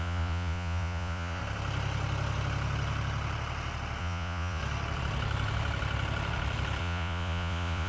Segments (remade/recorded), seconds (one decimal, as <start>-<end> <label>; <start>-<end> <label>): 0.0-1.4 remade; 1.4-4.0 recorded; 4.0-4.6 remade; 4.6-6.8 recorded; 6.8-7.9 remade